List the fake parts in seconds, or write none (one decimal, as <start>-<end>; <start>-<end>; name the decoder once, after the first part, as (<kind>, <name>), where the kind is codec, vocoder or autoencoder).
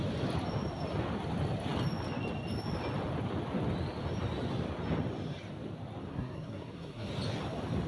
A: 6.1-7.1 (codec, SNAC)